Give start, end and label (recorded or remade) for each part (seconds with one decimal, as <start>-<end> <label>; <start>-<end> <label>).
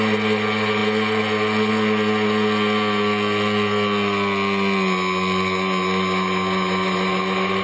0.0-7.6 recorded